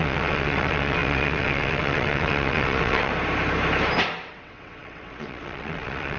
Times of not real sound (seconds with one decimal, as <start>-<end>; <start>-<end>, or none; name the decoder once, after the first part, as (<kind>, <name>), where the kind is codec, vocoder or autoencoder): 0.0-3.1 (vocoder, WaveNeXt); 4.3-6.2

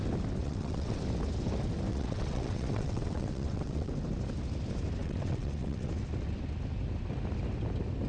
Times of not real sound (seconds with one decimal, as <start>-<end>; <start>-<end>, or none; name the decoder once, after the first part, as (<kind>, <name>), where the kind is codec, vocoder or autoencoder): 0.4-1.0 (vocoder, WaveNeXt); 1.9-3.9; 5.0-5.9

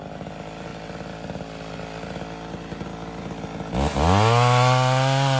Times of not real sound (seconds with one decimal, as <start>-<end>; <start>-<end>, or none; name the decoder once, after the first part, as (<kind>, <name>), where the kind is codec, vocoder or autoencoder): none

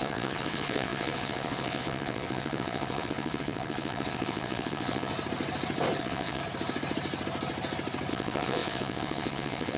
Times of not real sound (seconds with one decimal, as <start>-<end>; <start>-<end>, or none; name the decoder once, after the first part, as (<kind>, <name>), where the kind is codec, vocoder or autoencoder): 0.0-5.1 (vocoder, WaveNeXt); 6.0-6.4; 8.1-9.8

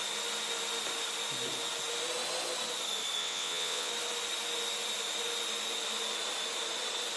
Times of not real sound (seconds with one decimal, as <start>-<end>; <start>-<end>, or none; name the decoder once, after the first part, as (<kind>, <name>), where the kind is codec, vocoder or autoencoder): 3.2-3.9 (vocoder, WaveNeXt)